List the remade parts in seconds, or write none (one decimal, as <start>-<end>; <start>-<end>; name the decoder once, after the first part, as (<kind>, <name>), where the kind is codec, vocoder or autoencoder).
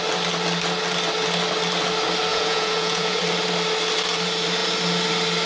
2.3-3.2 (vocoder, Vocos)